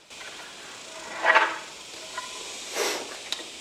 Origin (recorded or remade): recorded